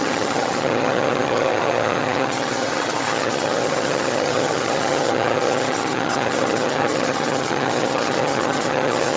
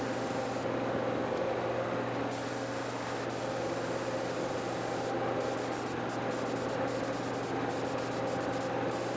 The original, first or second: second